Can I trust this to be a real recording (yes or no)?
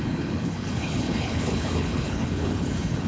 no